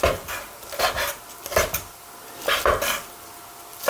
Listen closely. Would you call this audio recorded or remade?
recorded